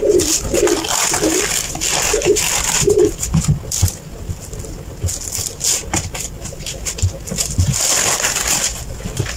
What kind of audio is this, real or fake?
real